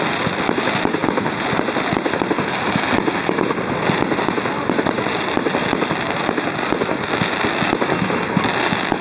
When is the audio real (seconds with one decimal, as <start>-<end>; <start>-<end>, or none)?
0.0-9.0